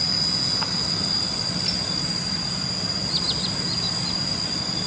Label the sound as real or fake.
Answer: real